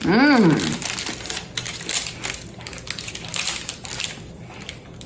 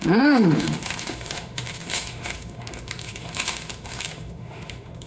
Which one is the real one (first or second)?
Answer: first